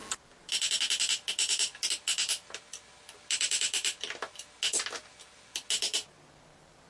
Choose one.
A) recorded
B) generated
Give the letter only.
A